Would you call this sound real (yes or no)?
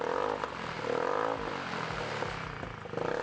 yes